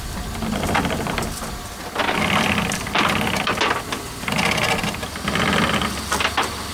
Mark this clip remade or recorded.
recorded